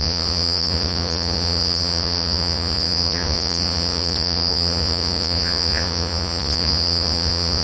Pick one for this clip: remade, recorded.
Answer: remade